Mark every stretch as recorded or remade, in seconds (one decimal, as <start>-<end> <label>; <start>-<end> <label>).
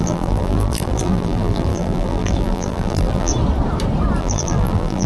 0.0-3.3 remade; 3.3-4.2 recorded; 4.2-5.1 remade